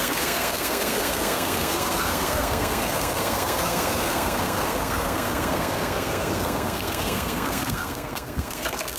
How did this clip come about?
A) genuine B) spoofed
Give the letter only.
B